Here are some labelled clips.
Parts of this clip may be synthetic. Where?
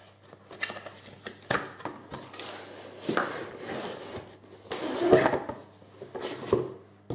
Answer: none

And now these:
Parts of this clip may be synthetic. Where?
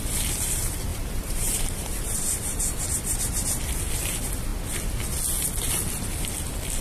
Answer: 0.9-2.8 (vocoder, BigVGAN v2)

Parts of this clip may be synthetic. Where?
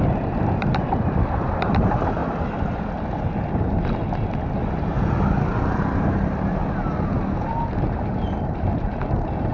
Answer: 0.0-2.2 (vocoder, BigVGAN v2); 6.0-6.6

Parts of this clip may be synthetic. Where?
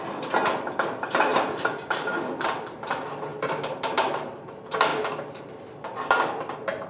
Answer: none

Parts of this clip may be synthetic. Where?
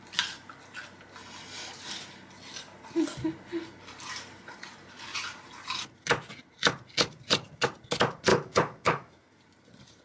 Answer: 8.3-9.4 (autoencoder, DAC-VAE)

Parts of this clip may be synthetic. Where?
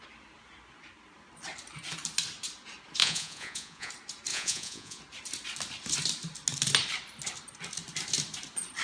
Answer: 3.0-3.9 (vocoder, Vocos); 4.3-5.0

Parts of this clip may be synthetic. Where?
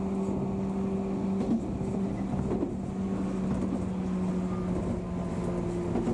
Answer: none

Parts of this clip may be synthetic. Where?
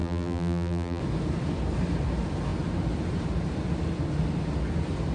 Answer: 0.0-1.0 (vocoder, BigVGAN v2)